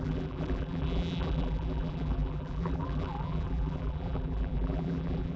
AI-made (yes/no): yes